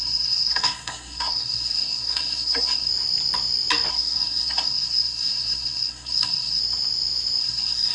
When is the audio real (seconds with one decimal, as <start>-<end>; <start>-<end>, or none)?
2.9-3.9; 6.6-7.4